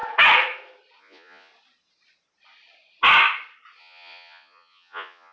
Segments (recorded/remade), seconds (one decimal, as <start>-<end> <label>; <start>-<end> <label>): 0.0-1.0 recorded; 1.0-1.5 remade; 1.5-3.8 recorded; 3.8-5.3 remade